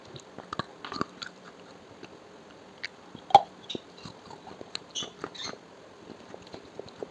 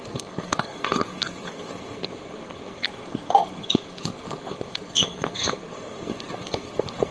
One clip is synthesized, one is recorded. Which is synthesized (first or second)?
second